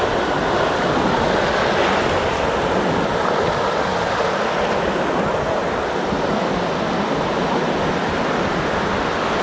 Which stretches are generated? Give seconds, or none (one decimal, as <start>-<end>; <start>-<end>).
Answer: none